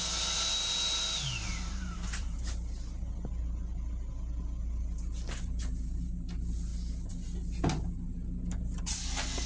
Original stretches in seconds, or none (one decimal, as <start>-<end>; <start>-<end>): 0.0-1.5; 2.4-9.5

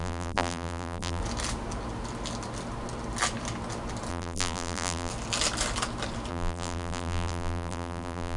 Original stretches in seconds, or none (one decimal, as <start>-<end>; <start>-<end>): 1.2-4.1; 5.1-6.3

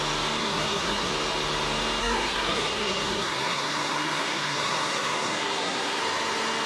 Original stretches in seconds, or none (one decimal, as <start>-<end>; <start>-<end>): 0.0-0.4; 1.1-2.0; 6.0-6.7

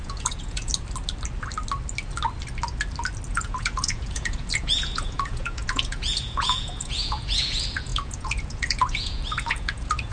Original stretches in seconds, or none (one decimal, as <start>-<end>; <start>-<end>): 0.7-3.3

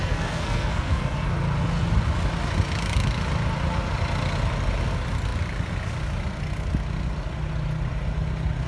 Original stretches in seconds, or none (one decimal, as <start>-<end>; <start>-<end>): 1.3-8.7

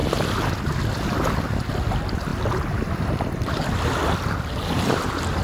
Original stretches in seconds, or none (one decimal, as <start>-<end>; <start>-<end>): 0.0-5.4